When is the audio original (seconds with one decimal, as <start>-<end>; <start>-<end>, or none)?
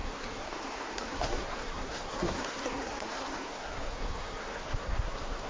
none